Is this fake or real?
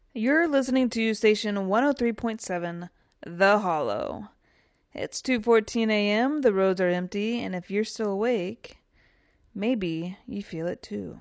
real